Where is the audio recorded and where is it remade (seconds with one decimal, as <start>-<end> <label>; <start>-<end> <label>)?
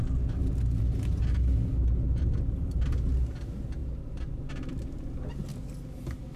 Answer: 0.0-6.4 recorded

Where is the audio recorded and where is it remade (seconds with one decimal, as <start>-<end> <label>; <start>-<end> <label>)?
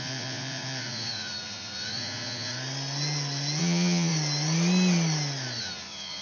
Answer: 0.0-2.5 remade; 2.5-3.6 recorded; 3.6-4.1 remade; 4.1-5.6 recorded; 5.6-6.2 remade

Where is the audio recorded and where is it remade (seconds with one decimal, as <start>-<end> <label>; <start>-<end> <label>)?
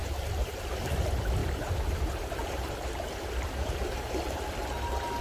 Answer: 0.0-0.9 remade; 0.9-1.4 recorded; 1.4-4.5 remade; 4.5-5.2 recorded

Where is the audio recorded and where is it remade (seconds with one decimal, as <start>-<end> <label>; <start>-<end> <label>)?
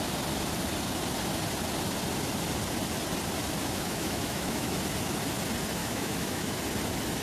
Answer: 0.0-3.6 recorded; 3.6-4.8 remade; 4.8-5.8 recorded; 5.8-6.6 remade; 6.6-7.2 recorded